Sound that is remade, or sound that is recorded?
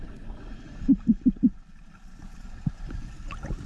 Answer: recorded